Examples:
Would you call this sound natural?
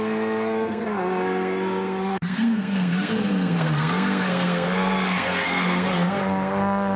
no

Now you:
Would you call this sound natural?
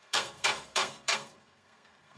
no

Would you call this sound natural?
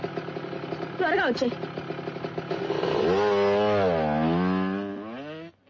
yes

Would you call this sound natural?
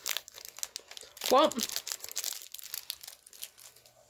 yes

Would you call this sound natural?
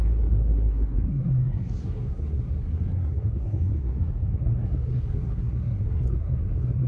no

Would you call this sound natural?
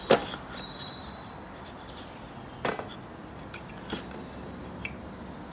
yes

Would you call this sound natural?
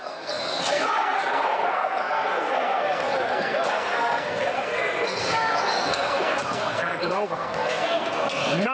no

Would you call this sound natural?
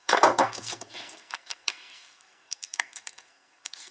no